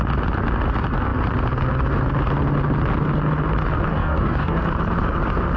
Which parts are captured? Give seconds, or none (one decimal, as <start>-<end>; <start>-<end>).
0.0-3.9; 4.6-5.6